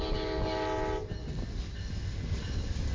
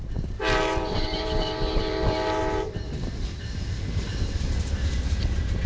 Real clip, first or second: first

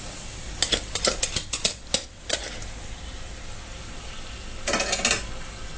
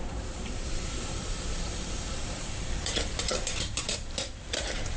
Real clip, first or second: first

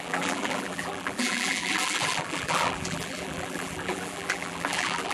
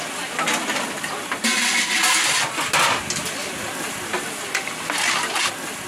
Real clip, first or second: second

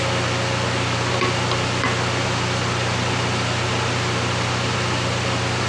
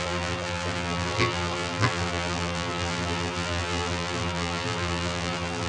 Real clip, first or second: first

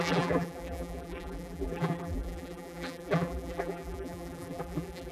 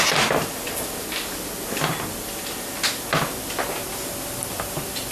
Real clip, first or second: second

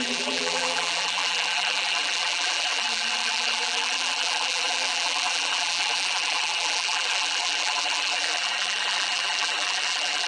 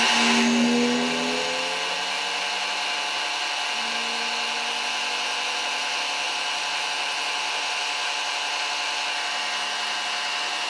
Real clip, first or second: second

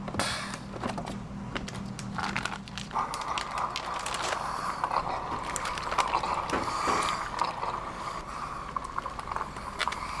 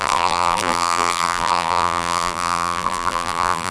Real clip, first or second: first